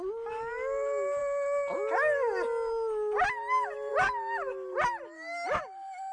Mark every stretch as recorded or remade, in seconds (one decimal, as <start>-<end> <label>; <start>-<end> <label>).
0.0-6.1 recorded